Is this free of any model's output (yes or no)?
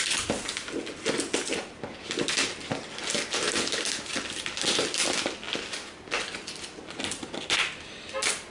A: yes